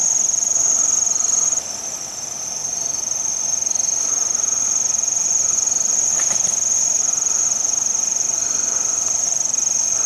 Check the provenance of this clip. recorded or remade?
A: remade